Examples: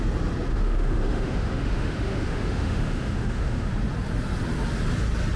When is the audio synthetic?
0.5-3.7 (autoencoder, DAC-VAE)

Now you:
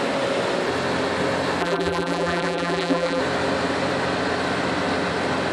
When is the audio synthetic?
1.6-3.2 (vocoder, BigVGAN v2)